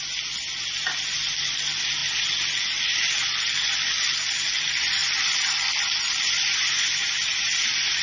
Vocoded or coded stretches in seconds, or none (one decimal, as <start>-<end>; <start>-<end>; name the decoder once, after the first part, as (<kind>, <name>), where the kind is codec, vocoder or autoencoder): 5.0-6.3 (vocoder, BigVGAN v2)